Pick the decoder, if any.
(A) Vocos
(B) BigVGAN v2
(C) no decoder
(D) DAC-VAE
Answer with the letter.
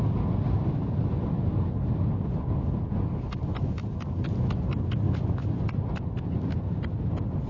C